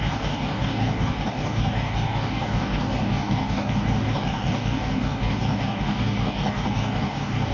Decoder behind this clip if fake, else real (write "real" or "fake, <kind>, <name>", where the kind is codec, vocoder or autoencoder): fake, codec, DAC